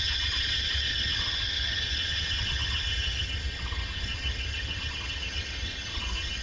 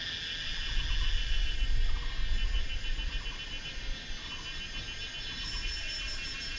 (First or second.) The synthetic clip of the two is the first